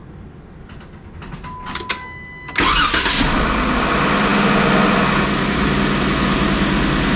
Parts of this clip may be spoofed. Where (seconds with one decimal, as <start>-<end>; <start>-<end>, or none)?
none

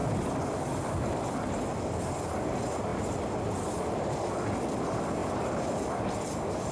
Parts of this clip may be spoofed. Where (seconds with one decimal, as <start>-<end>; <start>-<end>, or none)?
5.2-6.7

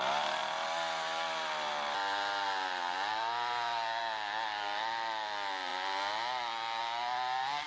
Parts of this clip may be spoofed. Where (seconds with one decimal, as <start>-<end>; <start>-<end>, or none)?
none

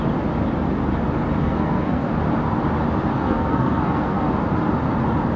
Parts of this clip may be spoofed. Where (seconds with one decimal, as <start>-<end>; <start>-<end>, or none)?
1.4-2.1; 3.1-4.3

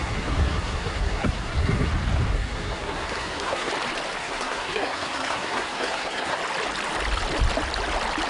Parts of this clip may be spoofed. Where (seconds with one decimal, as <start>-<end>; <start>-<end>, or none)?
0.0-1.9; 2.3-3.7; 4.2-6.4

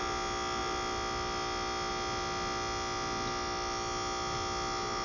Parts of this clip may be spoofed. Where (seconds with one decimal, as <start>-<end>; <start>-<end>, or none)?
none

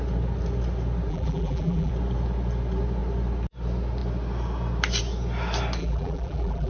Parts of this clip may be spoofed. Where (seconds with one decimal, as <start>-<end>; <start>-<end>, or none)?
1.1-1.9; 5.8-6.7